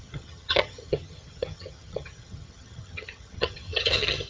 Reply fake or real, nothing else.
fake